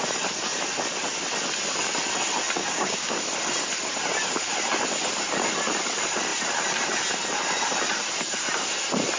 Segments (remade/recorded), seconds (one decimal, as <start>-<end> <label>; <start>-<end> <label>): 0.0-2.6 recorded; 2.6-3.2 remade; 3.2-9.2 recorded